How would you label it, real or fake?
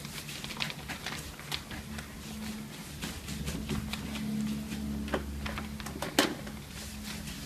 real